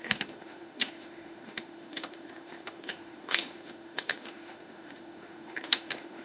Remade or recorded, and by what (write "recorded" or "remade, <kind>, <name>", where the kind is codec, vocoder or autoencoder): remade, autoencoder, DAC-VAE